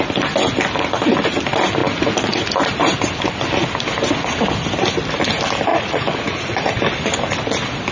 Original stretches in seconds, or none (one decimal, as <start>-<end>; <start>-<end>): 0.0-5.7; 6.8-7.9